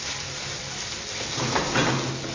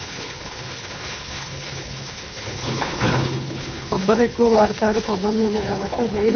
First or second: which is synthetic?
second